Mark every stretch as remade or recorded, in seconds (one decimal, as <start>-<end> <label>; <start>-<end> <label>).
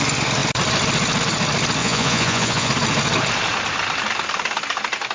0.0-1.8 recorded; 1.8-2.7 remade; 2.7-5.1 recorded